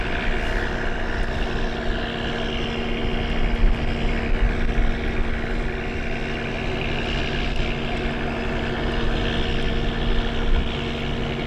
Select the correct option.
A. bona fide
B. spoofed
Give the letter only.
A